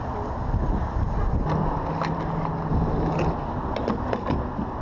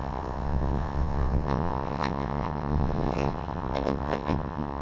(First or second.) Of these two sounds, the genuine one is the first